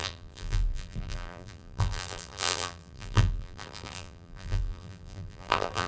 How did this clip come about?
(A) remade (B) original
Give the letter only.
A